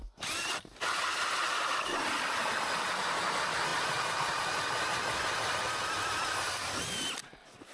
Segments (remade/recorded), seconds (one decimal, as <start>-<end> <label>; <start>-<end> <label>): 0.0-7.7 recorded